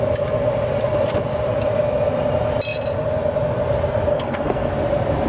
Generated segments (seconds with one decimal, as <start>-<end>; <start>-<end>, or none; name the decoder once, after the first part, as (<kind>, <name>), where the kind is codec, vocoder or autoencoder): 4.1-4.7 (codec, SNAC)